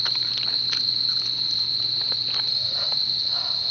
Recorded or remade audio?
recorded